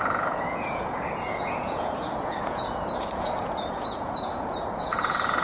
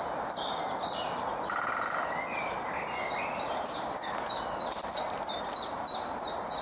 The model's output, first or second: first